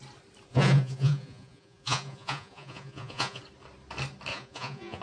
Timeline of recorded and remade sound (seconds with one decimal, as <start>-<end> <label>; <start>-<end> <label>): 0.0-0.5 recorded; 0.5-3.4 remade; 3.4-4.3 recorded; 4.3-5.0 remade